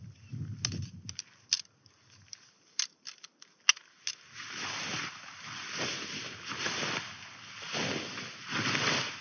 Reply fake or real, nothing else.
real